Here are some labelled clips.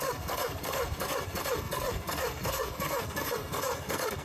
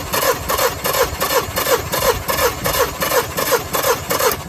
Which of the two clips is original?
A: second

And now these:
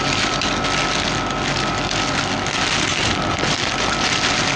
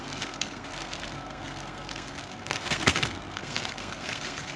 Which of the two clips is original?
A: first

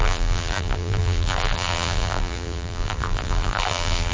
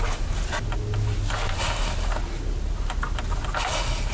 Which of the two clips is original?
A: second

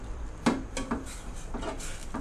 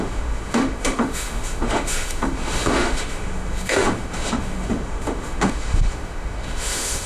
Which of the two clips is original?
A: first